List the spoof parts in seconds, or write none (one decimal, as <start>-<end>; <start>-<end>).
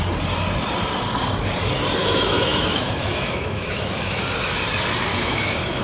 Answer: 2.0-4.2; 5.1-5.8